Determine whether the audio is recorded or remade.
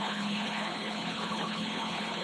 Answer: remade